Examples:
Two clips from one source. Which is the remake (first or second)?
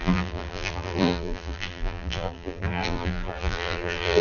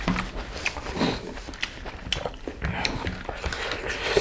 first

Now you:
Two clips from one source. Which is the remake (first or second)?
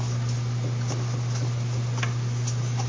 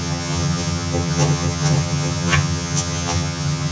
second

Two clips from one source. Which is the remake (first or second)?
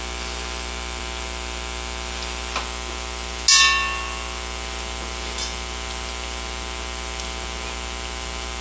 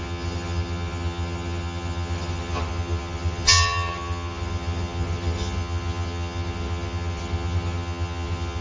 second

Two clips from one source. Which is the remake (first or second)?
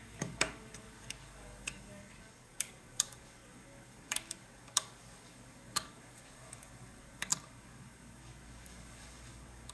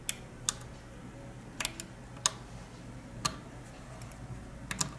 first